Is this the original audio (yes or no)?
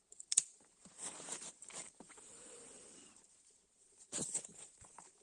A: no